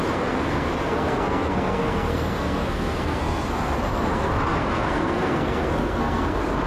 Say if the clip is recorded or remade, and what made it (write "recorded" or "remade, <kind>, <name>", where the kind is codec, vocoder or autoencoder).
remade, codec, SNAC